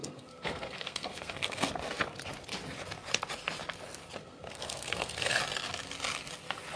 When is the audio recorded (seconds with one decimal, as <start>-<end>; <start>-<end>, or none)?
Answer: 1.7-4.2; 5.4-6.8